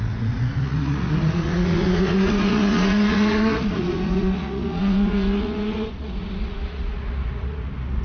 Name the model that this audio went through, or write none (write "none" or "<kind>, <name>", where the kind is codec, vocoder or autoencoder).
vocoder, Vocos